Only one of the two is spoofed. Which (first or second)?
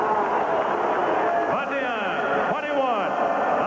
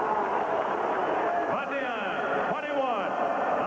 second